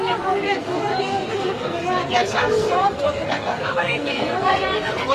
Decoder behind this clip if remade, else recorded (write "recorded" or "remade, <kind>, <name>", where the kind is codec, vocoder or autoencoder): remade, codec, SNAC